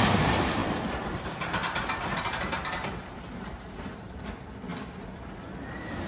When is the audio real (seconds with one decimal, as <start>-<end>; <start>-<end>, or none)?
0.0-0.6; 4.3-6.1